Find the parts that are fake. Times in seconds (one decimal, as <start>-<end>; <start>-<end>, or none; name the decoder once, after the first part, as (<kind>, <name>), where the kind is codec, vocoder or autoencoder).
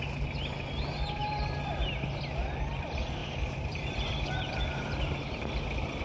1.2-2.2 (vocoder, BigVGAN v2); 3.2-5.3